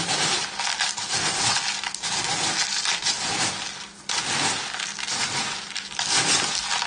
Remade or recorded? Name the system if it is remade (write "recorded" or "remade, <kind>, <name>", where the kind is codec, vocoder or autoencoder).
recorded